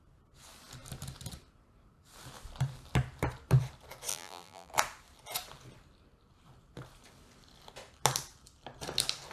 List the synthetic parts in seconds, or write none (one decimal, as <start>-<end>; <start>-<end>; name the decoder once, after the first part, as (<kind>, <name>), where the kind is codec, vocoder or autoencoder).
4.1-4.7 (vocoder, BigVGAN v2)